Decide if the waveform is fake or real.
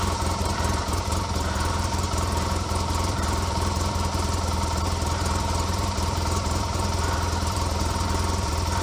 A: fake